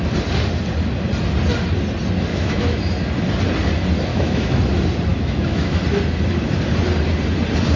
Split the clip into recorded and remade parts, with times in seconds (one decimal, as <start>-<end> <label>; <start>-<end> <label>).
0.0-2.3 recorded; 2.3-2.8 remade; 2.8-4.1 recorded; 4.1-4.6 remade; 4.6-5.1 recorded; 5.1-5.8 remade; 5.8-7.8 recorded